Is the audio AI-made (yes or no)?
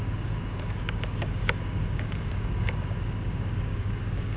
yes